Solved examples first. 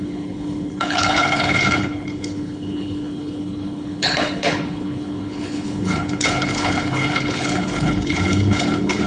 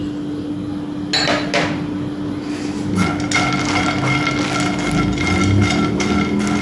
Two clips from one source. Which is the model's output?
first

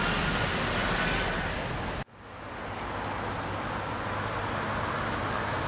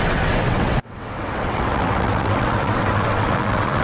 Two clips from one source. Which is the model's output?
second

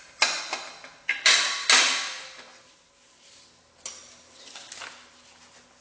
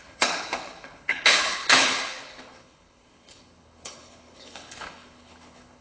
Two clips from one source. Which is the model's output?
second